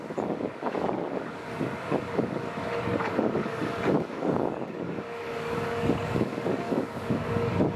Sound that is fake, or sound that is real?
fake